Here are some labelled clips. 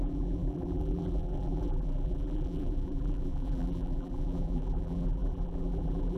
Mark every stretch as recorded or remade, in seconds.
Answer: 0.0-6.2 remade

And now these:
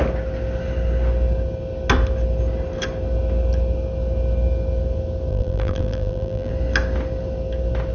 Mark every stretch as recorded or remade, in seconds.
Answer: 0.0-5.3 recorded; 5.3-6.5 remade; 6.5-7.9 recorded

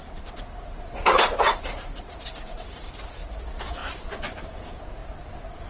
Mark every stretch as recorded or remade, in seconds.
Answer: 0.0-3.4 recorded; 3.4-3.8 remade; 3.8-4.4 recorded; 4.4-5.0 remade; 5.0-5.7 recorded

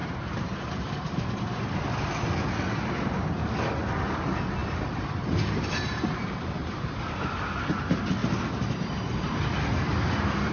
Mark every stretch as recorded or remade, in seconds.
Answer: 0.0-1.8 remade; 1.8-4.6 recorded; 4.6-7.3 remade; 7.3-10.5 recorded

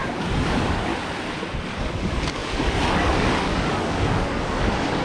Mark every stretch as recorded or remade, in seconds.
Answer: 0.0-0.9 remade; 0.9-1.8 recorded; 1.8-5.0 remade